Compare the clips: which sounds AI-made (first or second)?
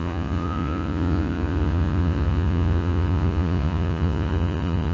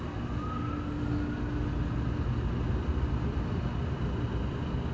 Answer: first